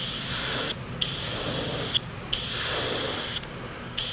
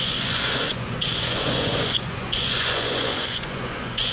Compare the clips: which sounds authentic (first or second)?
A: first